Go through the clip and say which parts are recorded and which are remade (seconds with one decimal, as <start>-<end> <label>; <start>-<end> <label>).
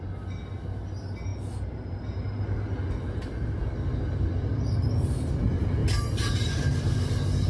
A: 0.0-7.5 recorded